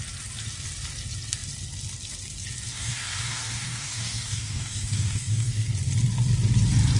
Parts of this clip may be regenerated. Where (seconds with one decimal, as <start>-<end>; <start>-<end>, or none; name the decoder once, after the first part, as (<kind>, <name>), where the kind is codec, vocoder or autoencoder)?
2.7-5.7 (codec, DAC)